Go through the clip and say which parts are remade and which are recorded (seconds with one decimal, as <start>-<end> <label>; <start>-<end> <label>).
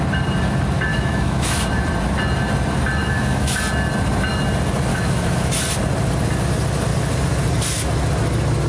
0.0-0.9 recorded; 0.9-1.6 remade; 1.6-3.0 recorded; 3.0-3.6 remade; 3.6-4.9 recorded; 4.9-5.5 remade; 5.5-8.7 recorded